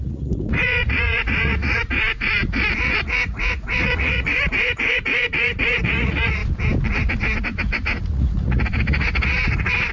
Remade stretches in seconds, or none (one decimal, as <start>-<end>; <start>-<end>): 0.0-6.4; 7.4-9.9